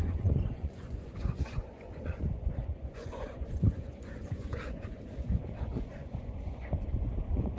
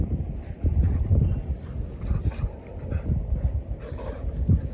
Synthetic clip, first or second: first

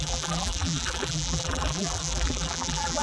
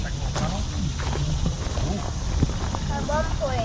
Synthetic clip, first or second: first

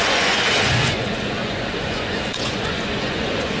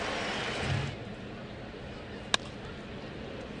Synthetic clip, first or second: first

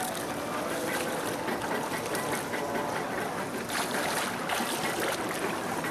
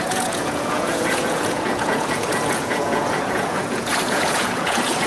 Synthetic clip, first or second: second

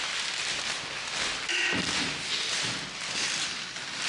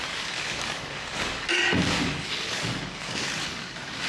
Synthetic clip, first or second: second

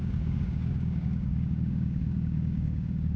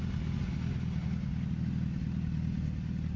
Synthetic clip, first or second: first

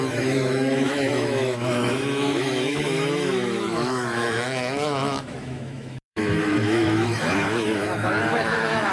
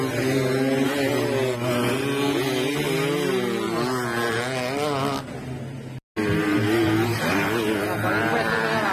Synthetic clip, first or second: first